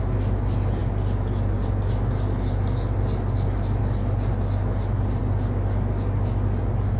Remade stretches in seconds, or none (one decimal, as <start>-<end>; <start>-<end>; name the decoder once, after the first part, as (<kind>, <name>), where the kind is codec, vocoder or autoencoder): none